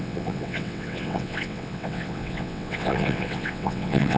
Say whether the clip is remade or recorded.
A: remade